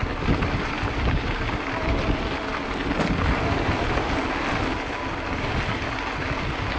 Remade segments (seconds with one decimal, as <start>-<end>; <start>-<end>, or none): none